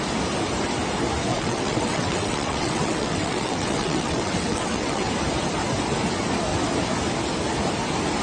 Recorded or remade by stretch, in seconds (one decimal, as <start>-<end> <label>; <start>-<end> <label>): 0.0-1.3 recorded; 1.3-5.1 remade; 5.1-8.2 recorded